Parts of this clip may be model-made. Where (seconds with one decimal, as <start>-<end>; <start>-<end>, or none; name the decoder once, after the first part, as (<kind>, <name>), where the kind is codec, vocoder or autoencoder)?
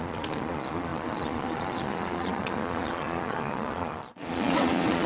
0.0-5.1 (vocoder, Vocos)